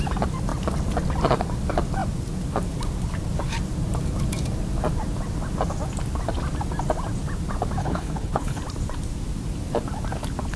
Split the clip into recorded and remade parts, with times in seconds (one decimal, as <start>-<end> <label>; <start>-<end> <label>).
0.0-7.8 recorded; 7.8-8.6 remade; 8.6-10.6 recorded